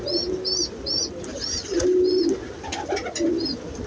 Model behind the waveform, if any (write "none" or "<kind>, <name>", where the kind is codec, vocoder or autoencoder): none